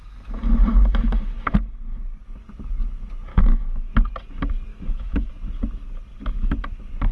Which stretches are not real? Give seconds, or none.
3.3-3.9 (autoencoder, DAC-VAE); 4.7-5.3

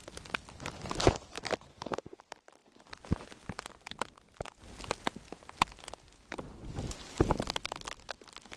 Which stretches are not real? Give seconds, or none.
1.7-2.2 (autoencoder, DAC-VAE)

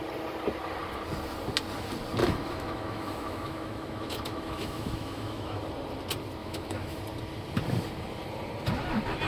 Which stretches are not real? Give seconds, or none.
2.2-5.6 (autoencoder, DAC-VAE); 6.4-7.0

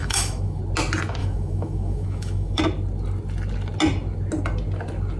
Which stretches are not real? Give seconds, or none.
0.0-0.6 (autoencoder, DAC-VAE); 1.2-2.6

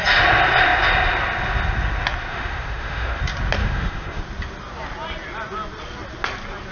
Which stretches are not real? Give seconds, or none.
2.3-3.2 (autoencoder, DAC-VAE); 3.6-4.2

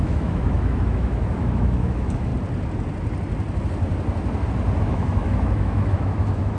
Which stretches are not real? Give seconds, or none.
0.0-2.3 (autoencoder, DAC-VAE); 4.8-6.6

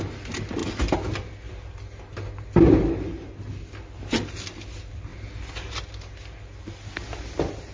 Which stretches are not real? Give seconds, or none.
none

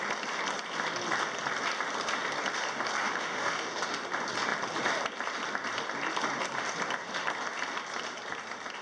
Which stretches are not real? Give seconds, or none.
3.0-4.0 (autoencoder, DAC-VAE)